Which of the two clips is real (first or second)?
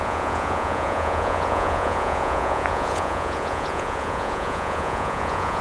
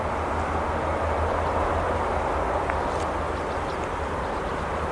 second